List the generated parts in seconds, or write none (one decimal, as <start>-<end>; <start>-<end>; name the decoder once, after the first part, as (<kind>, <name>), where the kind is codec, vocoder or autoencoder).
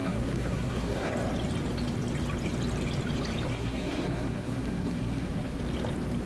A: 0.0-1.1 (codec, SNAC); 3.5-5.6